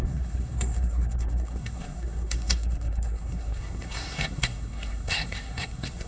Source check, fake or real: fake